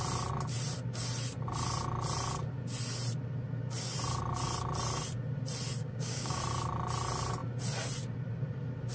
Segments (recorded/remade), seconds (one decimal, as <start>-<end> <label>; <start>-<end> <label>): 0.0-5.8 recorded; 5.8-6.4 remade; 6.4-8.9 recorded